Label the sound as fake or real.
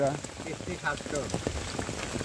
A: real